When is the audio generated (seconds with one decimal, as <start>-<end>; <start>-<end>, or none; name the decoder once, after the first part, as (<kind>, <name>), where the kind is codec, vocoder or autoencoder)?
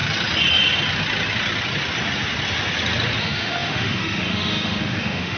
3.2-5.4 (autoencoder, DAC-VAE)